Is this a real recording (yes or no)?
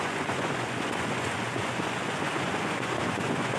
no